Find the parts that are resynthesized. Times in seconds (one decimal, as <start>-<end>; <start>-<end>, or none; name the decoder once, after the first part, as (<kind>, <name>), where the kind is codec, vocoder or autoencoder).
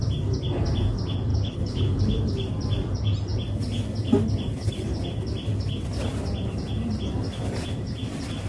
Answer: 1.3-2.2 (codec, HILCodec)